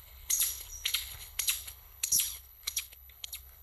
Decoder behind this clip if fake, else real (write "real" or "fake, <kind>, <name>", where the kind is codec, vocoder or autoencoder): fake, codec, HILCodec